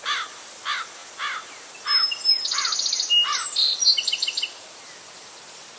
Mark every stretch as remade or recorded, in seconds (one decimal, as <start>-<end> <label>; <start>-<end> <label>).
0.0-5.8 recorded

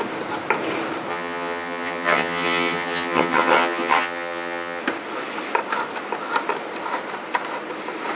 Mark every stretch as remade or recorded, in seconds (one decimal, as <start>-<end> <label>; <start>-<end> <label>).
0.0-1.1 recorded; 1.1-4.8 remade; 4.8-8.2 recorded

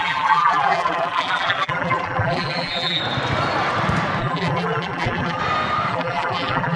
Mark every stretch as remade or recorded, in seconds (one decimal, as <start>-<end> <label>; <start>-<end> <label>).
0.0-3.0 remade; 3.0-4.2 recorded; 4.2-5.4 remade; 5.4-5.9 recorded; 5.9-6.8 remade

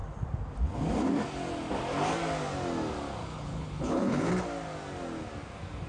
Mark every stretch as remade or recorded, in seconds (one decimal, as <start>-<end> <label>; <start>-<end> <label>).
0.0-3.2 recorded; 3.2-4.3 remade; 4.3-5.9 recorded

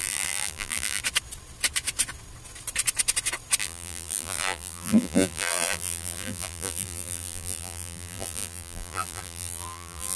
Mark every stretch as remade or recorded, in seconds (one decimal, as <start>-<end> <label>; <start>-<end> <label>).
0.0-1.0 remade; 1.0-3.6 recorded; 3.6-10.2 remade

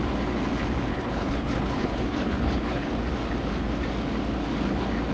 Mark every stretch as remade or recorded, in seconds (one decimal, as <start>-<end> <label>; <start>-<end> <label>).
0.0-0.9 recorded; 0.9-2.9 remade; 2.9-5.1 recorded

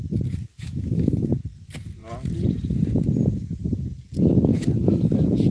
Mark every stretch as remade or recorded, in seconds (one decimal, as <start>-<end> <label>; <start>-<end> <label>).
0.0-0.5 recorded; 0.5-1.3 remade; 1.3-4.5 recorded; 4.5-5.0 remade; 5.0-5.5 recorded